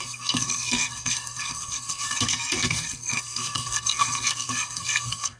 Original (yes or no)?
no